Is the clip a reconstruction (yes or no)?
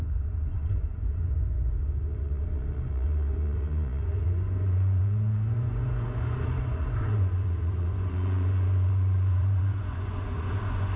yes